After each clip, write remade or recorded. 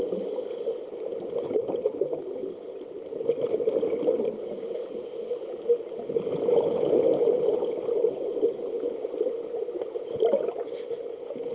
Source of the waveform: recorded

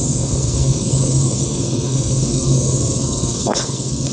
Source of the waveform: remade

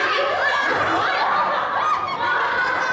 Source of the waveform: remade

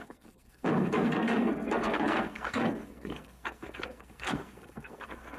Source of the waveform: remade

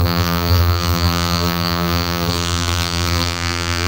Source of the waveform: remade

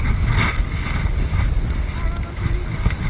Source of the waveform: recorded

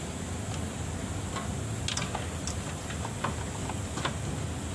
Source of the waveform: recorded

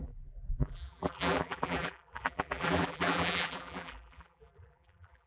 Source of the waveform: remade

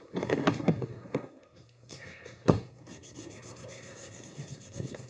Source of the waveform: remade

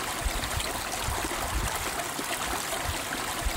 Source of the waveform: recorded